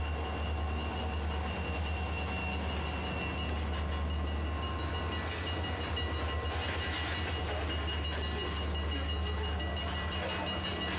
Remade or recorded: recorded